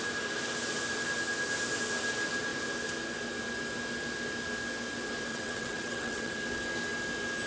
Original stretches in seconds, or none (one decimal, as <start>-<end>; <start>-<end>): 0.0-5.3; 6.4-7.5